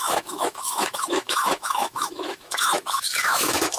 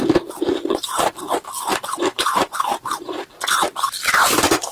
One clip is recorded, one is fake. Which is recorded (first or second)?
second